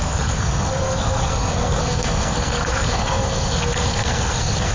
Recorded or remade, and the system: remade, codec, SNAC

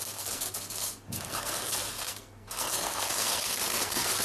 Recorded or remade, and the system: remade, codec, SNAC